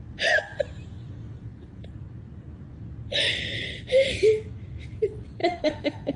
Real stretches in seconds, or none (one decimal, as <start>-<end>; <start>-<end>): 0.0-5.4